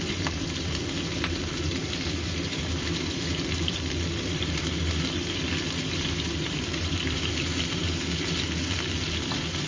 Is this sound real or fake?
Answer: fake